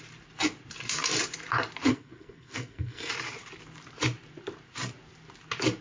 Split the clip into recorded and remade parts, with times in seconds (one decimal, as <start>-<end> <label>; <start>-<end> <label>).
0.0-1.9 recorded; 1.9-3.1 remade; 3.1-5.8 recorded